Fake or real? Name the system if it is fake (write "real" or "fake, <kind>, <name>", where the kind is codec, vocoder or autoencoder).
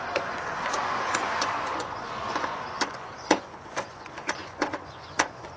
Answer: fake, vocoder, Vocos